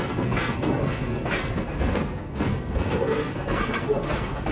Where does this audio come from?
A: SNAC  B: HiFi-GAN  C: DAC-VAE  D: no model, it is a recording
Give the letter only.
A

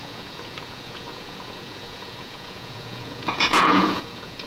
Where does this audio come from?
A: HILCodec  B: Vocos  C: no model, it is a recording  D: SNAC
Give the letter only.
B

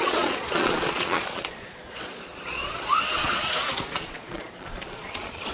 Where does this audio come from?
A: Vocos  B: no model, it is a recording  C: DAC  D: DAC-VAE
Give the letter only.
A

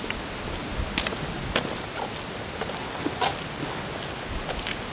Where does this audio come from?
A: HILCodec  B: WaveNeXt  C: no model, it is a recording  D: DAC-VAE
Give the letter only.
C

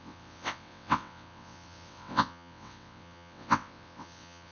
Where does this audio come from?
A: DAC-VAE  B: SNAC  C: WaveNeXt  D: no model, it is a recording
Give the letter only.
C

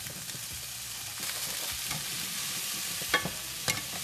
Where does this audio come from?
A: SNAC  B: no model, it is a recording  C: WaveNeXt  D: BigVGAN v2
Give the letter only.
D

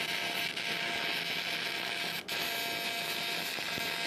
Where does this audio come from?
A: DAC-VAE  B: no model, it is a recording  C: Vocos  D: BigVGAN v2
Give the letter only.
B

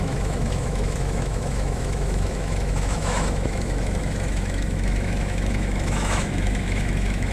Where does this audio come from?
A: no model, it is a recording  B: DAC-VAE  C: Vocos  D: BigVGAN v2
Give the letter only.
B